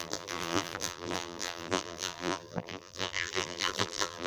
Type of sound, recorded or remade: remade